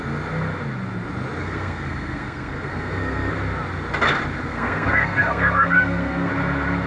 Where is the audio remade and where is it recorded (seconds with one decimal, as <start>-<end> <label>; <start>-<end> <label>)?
0.0-1.4 recorded; 1.4-3.3 remade; 3.3-4.5 recorded; 4.5-6.3 remade; 6.3-6.9 recorded